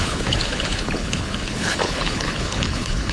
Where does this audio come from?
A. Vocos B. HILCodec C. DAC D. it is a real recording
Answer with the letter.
B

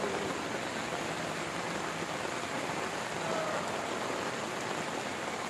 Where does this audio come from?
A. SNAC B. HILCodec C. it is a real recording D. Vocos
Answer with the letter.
C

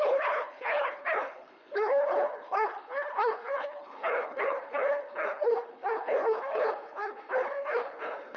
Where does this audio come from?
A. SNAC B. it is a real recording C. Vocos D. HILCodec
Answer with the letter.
D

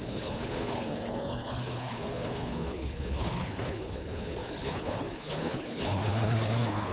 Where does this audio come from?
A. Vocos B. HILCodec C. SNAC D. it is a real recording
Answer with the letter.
B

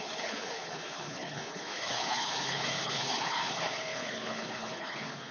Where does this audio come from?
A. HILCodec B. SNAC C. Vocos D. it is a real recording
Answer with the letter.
A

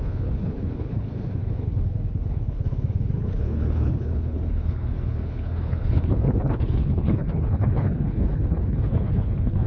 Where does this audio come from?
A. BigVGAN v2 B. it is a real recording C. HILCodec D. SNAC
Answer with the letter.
C